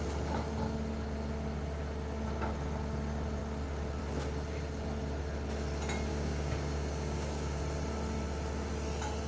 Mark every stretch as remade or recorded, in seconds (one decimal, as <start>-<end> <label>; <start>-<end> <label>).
0.0-6.1 recorded; 6.1-7.6 remade; 7.6-9.3 recorded